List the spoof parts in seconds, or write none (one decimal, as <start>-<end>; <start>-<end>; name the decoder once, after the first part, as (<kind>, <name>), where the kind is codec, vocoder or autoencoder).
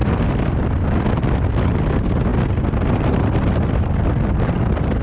none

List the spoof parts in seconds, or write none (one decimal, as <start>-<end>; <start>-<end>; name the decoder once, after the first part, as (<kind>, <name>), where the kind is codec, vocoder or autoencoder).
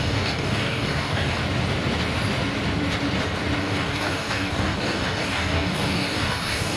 0.0-1.4 (codec, DAC); 3.6-6.8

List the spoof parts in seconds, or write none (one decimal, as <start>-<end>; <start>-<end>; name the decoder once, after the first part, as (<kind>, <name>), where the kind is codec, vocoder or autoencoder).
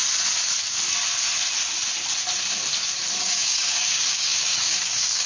3.2-5.3 (codec, DAC)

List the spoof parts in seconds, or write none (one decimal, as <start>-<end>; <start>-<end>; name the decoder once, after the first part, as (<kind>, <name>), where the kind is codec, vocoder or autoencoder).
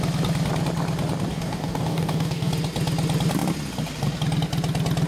1.3-2.5 (codec, DAC)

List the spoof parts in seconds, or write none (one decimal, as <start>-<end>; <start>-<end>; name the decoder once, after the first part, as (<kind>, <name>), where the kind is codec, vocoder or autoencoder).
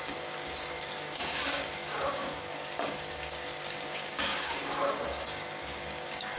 0.0-6.4 (codec, DAC)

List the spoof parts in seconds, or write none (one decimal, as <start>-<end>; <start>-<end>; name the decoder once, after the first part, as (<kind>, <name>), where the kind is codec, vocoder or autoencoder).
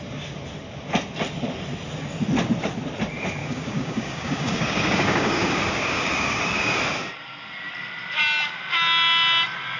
3.4-6.8 (codec, DAC)